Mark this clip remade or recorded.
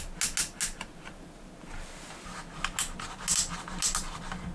recorded